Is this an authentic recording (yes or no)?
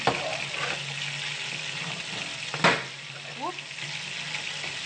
yes